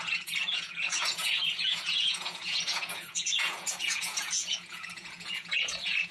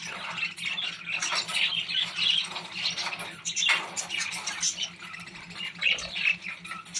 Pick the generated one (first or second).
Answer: first